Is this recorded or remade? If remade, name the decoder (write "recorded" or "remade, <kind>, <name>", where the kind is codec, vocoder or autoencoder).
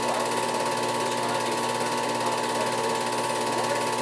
recorded